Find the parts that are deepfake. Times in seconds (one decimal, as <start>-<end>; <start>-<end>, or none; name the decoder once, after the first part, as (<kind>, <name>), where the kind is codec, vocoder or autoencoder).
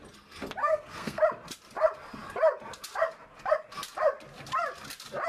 0.6-1.2 (codec, SNAC)